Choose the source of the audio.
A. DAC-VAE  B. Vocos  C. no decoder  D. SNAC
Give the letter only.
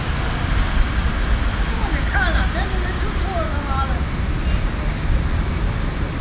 C